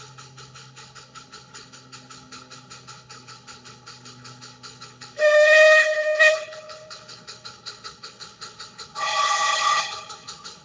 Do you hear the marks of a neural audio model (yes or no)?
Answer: yes